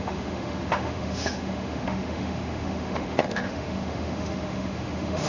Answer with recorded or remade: remade